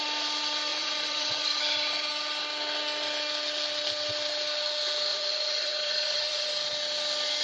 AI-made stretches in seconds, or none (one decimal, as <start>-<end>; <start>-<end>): 0.7-1.6; 5.1-6.5